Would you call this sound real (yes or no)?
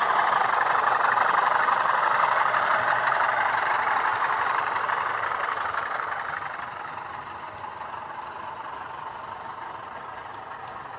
yes